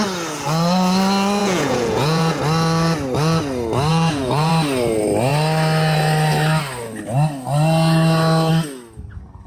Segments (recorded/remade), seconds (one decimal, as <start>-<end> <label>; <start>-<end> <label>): 0.0-1.4 recorded; 1.4-2.4 remade; 2.4-3.9 recorded; 3.9-4.5 remade; 4.5-9.5 recorded